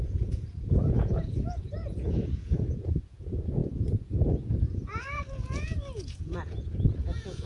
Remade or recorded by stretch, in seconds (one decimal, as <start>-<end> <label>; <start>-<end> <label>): 0.0-7.5 remade